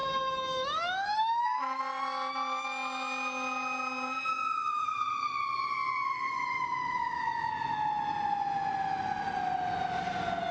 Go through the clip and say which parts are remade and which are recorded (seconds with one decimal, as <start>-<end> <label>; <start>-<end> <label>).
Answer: 0.0-1.8 remade; 1.8-4.3 recorded; 4.3-5.4 remade; 5.4-6.0 recorded; 6.0-7.5 remade; 7.5-10.5 recorded